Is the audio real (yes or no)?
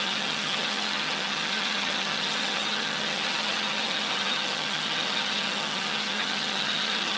no